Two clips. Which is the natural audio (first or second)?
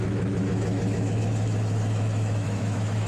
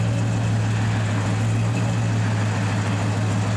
second